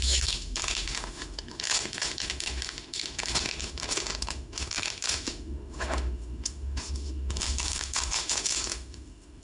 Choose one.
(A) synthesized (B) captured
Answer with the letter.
A